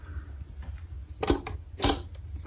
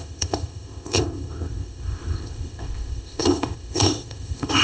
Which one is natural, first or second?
first